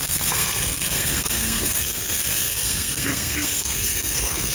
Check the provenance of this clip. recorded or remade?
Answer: remade